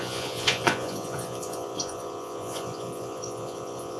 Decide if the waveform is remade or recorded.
remade